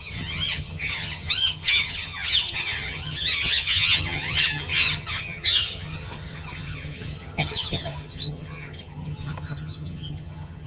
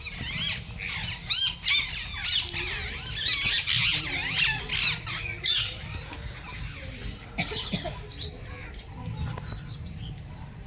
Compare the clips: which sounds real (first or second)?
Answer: second